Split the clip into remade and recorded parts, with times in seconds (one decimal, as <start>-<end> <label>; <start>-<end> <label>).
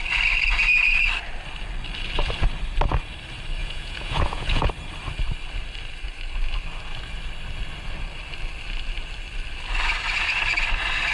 0.0-3.6 recorded; 3.6-4.7 remade; 4.7-11.1 recorded